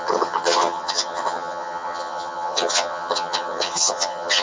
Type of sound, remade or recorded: remade